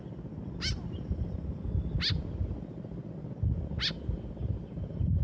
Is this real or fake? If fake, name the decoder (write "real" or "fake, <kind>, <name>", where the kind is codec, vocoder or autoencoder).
real